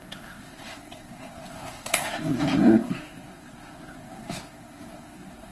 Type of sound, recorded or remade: remade